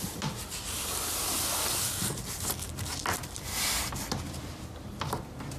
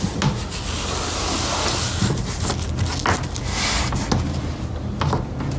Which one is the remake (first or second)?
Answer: first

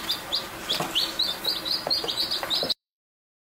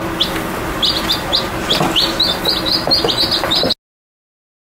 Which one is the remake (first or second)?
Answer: first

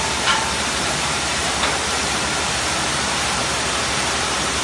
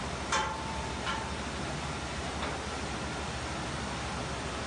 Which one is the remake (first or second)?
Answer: first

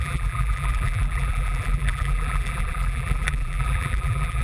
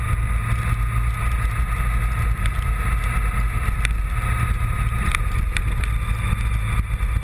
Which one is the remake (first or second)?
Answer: first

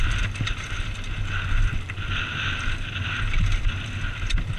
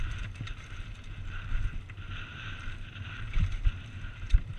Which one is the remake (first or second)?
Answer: second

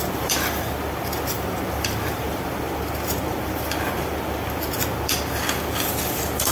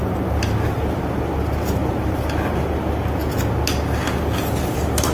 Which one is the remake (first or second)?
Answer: first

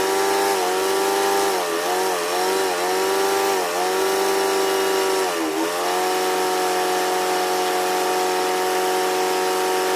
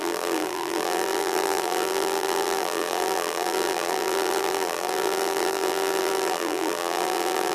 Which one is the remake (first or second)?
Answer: second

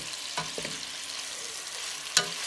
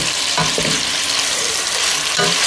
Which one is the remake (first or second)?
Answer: second